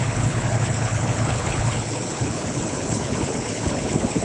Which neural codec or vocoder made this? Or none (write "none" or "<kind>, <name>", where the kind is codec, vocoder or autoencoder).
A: codec, HILCodec